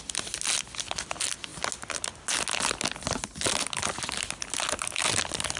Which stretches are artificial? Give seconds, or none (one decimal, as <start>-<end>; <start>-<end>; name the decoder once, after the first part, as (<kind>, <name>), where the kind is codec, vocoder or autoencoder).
none